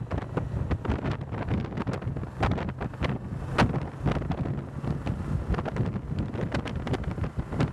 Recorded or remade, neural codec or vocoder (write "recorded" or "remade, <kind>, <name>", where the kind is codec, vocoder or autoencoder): recorded